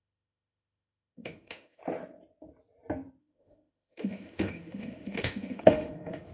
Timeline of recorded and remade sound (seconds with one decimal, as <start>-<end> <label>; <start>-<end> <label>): 0.0-1.8 remade; 1.8-3.2 recorded; 3.2-6.3 remade

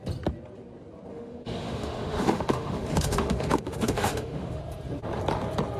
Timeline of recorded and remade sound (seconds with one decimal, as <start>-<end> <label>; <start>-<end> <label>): 0.0-1.1 recorded; 1.1-4.6 remade; 4.6-5.8 recorded

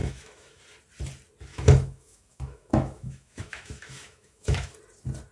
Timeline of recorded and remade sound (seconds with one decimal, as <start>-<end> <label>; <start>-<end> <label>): 0.0-0.6 remade; 0.6-1.5 recorded; 1.5-4.7 remade; 4.7-5.3 recorded

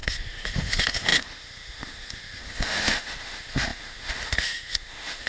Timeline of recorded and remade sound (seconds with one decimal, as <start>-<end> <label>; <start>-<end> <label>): 0.0-5.3 remade

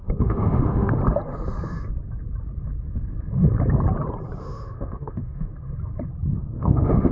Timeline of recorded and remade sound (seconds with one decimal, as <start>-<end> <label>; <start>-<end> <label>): 0.0-1.0 remade; 1.0-4.4 recorded; 4.4-5.5 remade; 5.5-6.3 recorded; 6.3-7.1 remade

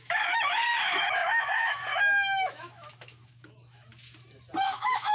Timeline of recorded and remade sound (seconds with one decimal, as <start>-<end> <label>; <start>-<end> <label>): 0.0-3.9 remade; 3.9-4.6 recorded; 4.6-5.1 remade